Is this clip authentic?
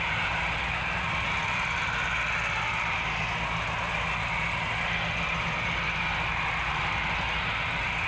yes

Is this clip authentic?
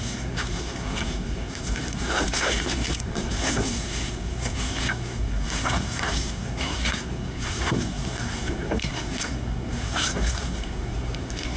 no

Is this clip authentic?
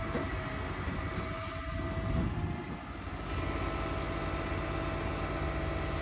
yes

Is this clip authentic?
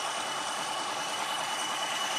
no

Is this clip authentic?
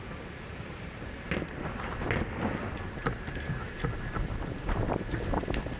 yes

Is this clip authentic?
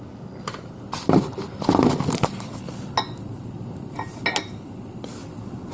yes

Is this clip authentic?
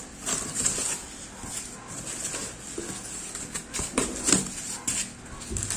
yes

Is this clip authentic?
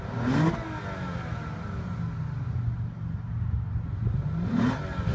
yes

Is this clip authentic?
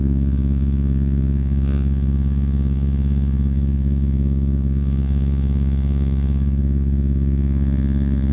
no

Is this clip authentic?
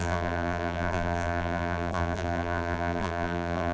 no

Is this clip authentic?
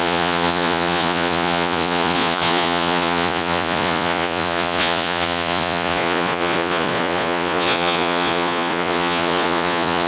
no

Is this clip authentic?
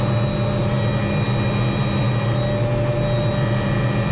yes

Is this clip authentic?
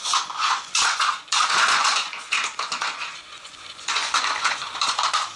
no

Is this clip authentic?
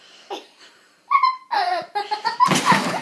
yes